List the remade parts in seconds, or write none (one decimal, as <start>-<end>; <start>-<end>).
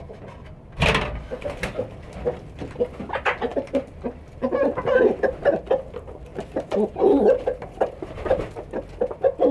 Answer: 3.5-4.0; 4.4-5.4; 6.3-8.5